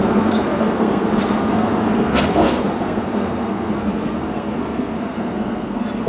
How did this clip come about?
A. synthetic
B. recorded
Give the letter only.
A